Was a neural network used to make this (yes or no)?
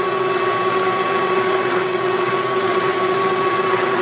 yes